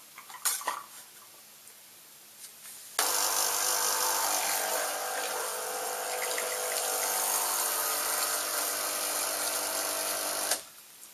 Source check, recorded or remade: recorded